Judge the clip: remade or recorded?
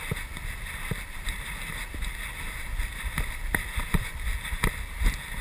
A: recorded